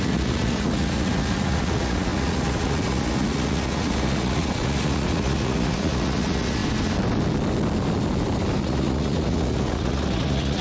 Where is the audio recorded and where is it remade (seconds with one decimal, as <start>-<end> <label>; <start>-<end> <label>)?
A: 0.0-6.6 remade; 6.6-8.6 recorded; 8.6-10.6 remade